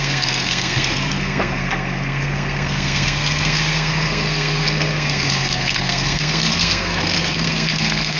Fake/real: fake